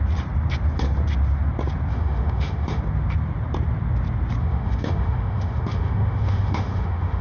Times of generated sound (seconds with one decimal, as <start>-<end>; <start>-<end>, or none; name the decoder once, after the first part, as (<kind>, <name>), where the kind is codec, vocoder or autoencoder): 1.9-2.8 (autoencoder, DAC-VAE); 4.4-7.2